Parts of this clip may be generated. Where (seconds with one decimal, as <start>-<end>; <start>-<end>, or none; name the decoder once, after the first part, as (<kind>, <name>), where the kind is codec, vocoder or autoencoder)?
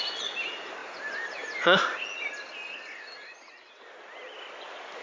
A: none